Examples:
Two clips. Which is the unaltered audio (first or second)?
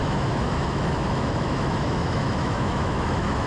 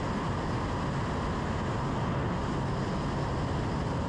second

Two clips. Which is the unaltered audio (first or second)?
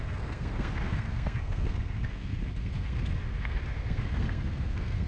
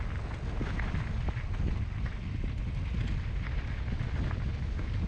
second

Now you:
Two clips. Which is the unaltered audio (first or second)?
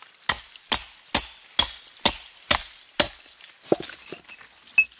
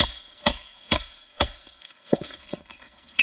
first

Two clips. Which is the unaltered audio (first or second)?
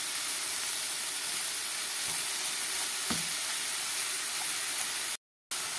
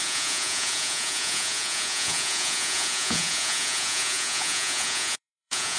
first